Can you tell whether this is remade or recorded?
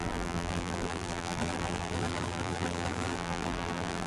remade